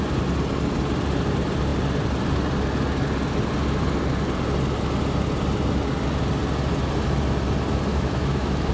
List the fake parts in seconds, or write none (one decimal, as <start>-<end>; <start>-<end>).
7.9-8.7